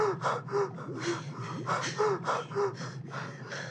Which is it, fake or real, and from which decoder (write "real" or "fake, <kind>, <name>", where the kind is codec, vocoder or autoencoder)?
real